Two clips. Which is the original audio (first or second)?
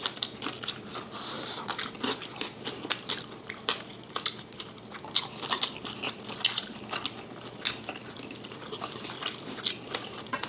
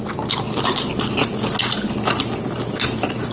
second